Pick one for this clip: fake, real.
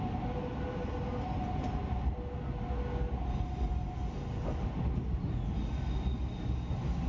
real